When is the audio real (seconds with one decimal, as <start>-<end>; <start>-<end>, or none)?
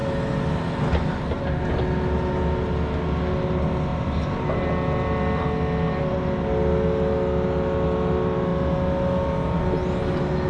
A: 0.0-3.9; 5.4-10.5